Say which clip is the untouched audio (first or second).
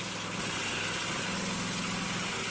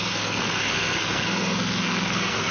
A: first